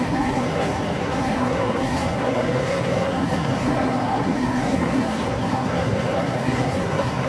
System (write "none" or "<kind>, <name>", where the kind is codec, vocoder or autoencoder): codec, SNAC